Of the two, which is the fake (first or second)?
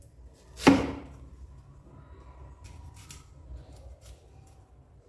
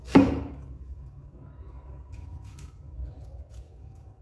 second